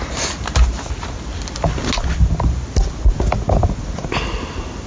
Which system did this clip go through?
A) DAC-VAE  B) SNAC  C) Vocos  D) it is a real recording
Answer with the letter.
D